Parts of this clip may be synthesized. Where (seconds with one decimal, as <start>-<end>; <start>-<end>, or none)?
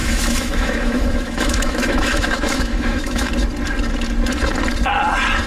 0.0-3.3